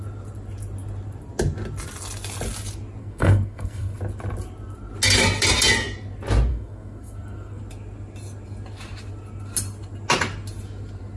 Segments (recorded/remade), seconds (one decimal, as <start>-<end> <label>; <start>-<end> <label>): 0.0-3.0 recorded; 3.0-4.0 remade; 4.0-6.5 recorded; 6.5-7.6 remade; 7.6-11.2 recorded